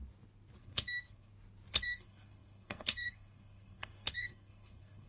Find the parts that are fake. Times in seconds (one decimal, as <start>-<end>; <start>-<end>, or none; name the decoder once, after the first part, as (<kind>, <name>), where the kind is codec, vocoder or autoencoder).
0.6-1.3 (codec, SNAC); 1.8-5.1

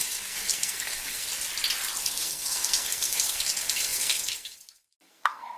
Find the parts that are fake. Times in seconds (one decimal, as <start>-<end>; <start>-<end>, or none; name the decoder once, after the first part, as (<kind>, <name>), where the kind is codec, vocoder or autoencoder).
0.0-1.3 (codec, SNAC); 2.0-5.6

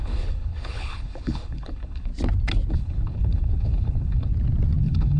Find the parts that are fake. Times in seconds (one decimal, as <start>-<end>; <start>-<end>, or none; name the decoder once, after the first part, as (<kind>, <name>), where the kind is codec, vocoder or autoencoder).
0.0-2.1 (codec, HILCodec); 2.7-4.3; 4.8-5.2

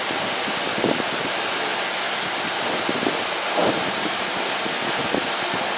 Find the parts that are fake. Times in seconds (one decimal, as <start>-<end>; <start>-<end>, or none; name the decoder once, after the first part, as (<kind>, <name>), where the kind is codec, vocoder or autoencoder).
none

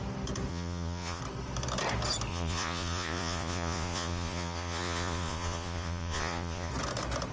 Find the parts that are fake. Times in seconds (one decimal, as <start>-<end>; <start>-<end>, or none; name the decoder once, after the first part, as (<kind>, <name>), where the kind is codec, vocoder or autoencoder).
0.5-1.2 (vocoder, Vocos); 2.3-6.7

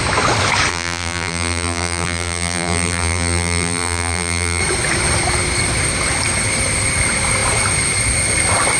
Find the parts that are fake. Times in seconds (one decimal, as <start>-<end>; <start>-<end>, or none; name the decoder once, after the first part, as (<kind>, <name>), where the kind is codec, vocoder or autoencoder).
0.7-4.6 (vocoder, BigVGAN v2)

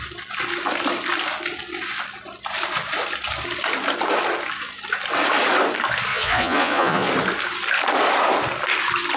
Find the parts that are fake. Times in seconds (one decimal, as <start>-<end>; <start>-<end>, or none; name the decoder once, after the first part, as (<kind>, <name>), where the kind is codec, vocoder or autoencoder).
6.1-7.1 (vocoder, Vocos)

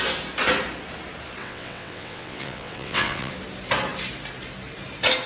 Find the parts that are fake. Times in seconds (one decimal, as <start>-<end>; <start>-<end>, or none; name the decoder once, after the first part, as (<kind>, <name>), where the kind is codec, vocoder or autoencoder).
1.4-3.3 (vocoder, WaveNeXt)